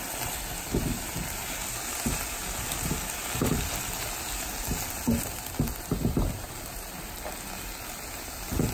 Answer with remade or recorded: recorded